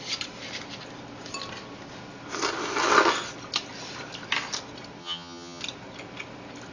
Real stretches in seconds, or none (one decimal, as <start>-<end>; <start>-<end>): 0.0-5.0; 5.6-6.7